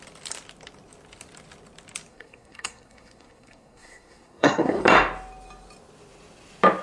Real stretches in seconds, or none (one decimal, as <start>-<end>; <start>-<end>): 0.0-2.1; 4.8-6.8